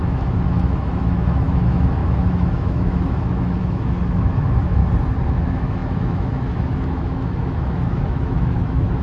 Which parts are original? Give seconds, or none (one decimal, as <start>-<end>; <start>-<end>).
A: 4.8-5.3